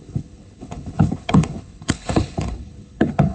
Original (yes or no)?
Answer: no